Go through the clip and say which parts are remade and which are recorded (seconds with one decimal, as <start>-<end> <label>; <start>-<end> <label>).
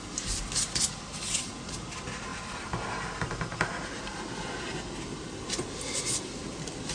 0.0-6.9 recorded